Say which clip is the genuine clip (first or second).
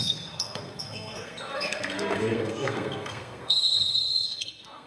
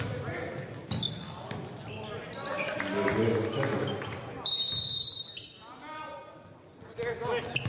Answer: second